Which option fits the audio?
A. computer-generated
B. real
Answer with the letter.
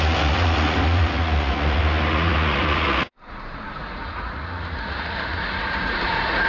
A